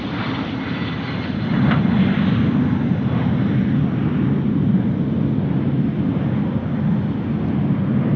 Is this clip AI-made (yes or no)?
no